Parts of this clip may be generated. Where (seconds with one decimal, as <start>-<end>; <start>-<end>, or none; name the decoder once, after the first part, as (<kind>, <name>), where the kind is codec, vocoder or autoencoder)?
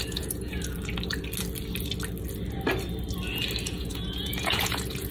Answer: 0.0-0.5 (vocoder, Vocos); 3.6-5.1